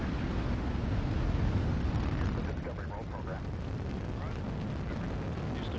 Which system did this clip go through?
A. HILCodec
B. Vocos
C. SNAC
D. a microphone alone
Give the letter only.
D